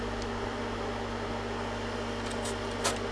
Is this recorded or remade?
recorded